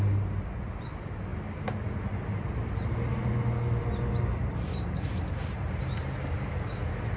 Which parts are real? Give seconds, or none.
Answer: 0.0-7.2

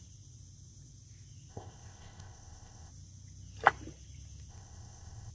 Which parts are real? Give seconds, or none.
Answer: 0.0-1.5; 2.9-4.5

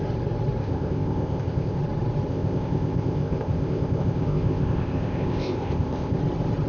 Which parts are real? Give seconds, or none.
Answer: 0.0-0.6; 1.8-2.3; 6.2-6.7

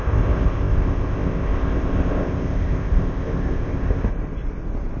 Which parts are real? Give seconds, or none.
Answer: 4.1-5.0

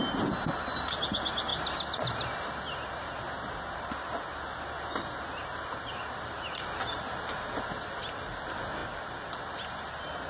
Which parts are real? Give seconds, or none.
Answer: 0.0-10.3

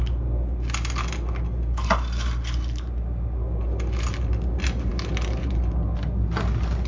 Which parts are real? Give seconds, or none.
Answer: 0.0-6.9